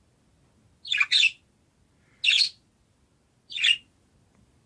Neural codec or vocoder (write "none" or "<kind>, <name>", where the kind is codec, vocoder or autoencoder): none